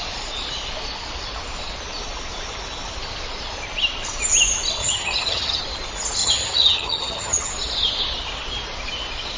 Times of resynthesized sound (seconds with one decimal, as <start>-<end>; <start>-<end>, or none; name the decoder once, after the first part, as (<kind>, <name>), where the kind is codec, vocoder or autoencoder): 4.8-5.6 (vocoder, HiFi-GAN); 6.2-7.5